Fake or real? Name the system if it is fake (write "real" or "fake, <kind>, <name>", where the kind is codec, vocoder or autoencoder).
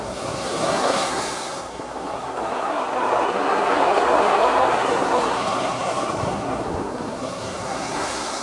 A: fake, codec, SNAC